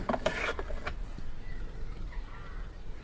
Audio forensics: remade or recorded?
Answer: recorded